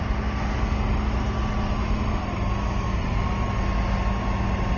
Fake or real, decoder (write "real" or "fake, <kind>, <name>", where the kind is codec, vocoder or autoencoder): real